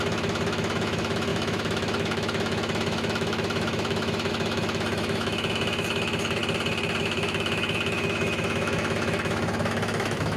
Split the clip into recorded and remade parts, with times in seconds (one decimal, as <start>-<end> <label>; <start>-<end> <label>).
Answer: 0.0-6.4 remade; 6.4-7.0 recorded; 7.0-10.4 remade